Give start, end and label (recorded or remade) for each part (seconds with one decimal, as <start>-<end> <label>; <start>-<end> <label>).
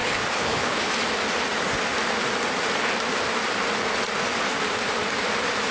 0.0-0.9 remade; 0.9-5.7 recorded